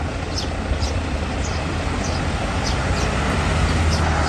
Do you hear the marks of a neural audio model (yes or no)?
no